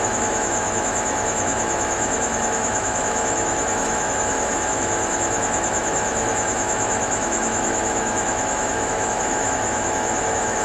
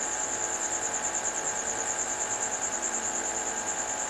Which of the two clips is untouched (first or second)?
second